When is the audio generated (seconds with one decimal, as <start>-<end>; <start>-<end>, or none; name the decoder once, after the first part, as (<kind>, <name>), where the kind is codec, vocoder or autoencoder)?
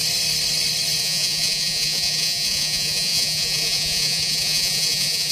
1.0-5.3 (vocoder, Vocos)